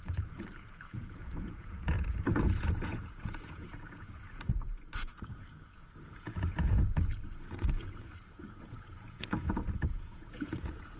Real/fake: fake